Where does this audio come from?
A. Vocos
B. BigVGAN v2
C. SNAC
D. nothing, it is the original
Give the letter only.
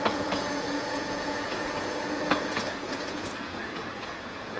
A